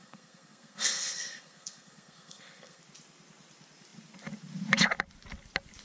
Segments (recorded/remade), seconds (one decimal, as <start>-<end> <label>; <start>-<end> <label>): 0.0-2.8 remade; 2.8-5.8 recorded